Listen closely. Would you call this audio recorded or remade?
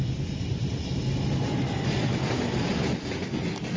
recorded